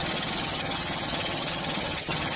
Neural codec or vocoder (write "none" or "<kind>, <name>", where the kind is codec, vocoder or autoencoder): vocoder, HiFi-GAN